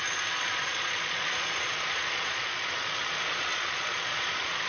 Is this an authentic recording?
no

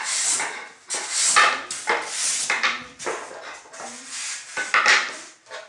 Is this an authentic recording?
yes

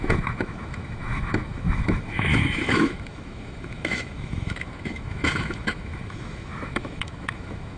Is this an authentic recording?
no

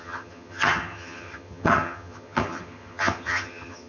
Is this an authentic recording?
no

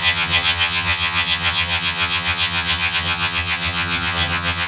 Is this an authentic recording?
no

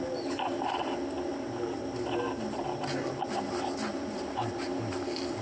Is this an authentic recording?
yes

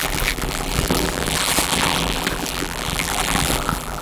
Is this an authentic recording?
no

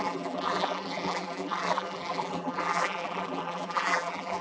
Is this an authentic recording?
no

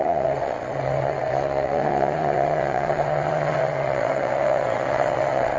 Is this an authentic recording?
no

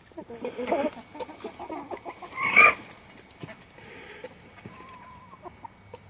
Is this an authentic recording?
yes